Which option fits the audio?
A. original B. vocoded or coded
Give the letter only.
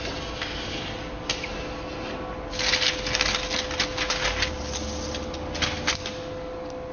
A